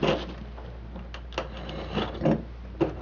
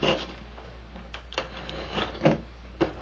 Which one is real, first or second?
first